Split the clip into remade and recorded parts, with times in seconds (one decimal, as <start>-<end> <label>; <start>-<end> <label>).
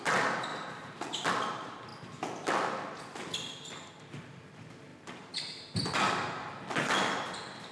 0.0-7.7 recorded